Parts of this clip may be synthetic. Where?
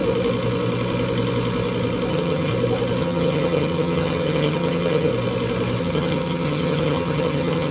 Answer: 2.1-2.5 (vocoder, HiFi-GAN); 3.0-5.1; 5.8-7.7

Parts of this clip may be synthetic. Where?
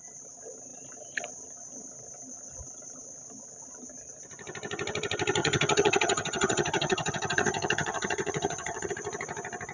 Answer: 5.4-8.9 (vocoder, HiFi-GAN)